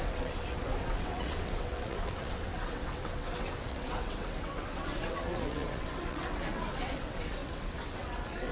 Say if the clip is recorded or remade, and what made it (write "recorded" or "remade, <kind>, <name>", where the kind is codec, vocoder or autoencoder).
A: remade, vocoder, WaveNeXt